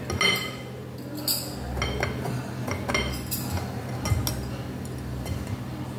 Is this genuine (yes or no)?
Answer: yes